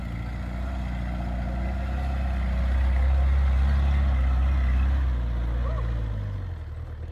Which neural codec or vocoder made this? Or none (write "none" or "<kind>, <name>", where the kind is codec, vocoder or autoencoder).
none